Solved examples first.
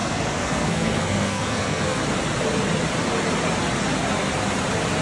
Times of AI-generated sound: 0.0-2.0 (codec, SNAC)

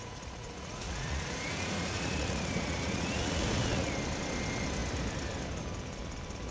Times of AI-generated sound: 0.0-3.9 (vocoder, Vocos)

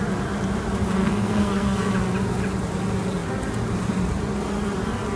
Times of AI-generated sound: 1.0-1.9 (codec, SNAC)

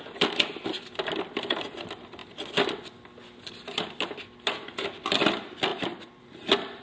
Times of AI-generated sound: none

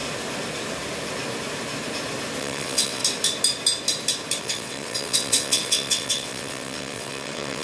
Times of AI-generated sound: 2.4-3.0 (vocoder, WaveNeXt); 4.4-7.6

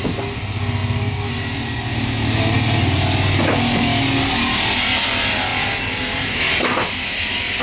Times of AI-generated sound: none

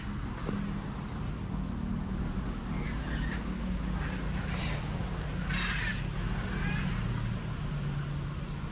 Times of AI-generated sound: none